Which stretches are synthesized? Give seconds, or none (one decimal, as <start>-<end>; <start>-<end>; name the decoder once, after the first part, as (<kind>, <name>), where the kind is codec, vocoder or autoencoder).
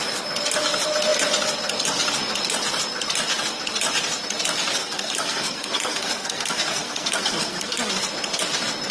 4.8-7.9 (codec, SNAC)